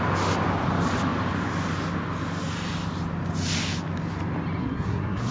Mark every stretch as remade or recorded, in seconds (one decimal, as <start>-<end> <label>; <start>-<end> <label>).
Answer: 0.0-4.6 recorded; 4.6-5.3 remade